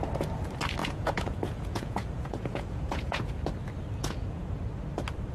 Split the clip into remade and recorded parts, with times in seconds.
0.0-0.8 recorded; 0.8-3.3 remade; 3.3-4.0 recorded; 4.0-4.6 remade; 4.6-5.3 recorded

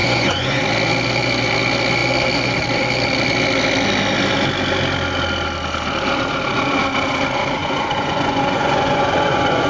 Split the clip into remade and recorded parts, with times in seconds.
0.0-0.6 remade; 0.6-7.6 recorded; 7.6-9.7 remade

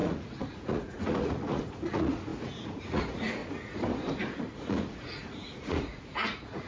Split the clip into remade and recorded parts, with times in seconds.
0.0-3.4 remade; 3.4-4.2 recorded; 4.2-6.7 remade

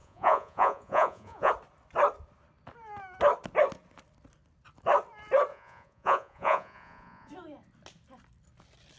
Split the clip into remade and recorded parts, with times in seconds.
0.0-1.5 remade; 1.5-5.5 recorded; 5.5-7.3 remade; 7.3-9.0 recorded

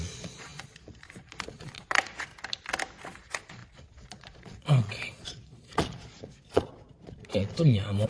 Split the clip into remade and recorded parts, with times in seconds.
0.0-2.3 remade; 2.3-3.0 recorded; 3.0-8.1 remade

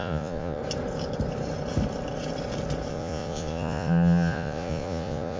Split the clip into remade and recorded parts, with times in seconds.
0.0-0.6 remade; 0.6-2.9 recorded; 2.9-5.4 remade

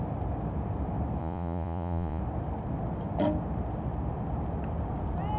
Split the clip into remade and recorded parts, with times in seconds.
0.0-1.2 recorded; 1.2-2.2 remade; 2.2-5.4 recorded

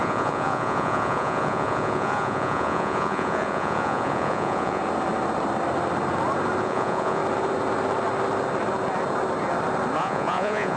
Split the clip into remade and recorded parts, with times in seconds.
0.0-4.8 remade; 4.8-6.6 recorded; 6.6-7.2 remade; 7.2-10.0 recorded; 10.0-10.8 remade